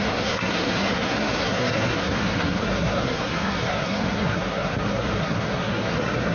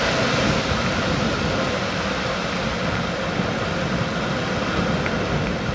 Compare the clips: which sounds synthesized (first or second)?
first